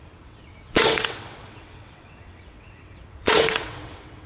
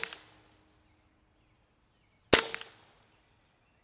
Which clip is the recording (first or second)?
second